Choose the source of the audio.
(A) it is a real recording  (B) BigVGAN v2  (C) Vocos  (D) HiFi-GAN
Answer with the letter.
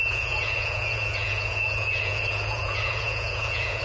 C